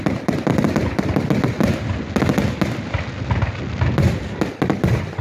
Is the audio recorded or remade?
recorded